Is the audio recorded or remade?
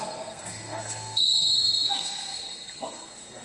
remade